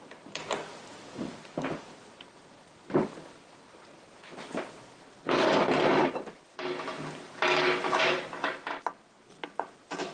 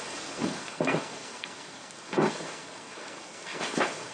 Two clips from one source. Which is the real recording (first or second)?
first